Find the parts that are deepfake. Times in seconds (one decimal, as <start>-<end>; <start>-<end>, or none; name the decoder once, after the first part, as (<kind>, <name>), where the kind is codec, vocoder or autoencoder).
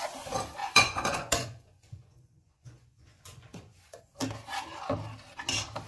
0.6-4.0 (vocoder, Vocos)